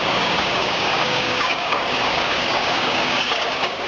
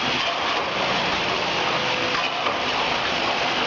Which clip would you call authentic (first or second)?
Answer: second